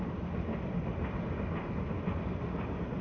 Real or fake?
real